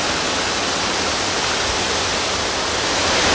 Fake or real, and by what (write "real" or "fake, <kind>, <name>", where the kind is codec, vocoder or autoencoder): real